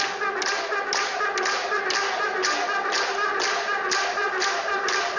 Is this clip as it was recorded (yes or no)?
yes